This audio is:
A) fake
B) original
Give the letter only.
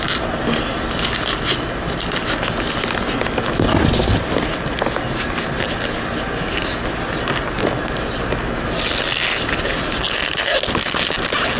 B